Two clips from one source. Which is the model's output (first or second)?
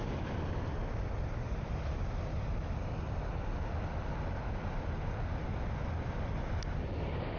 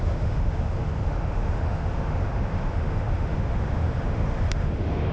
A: second